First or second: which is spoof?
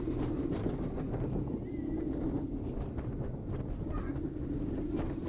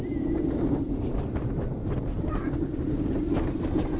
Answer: second